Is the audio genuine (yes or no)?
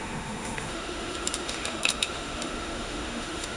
no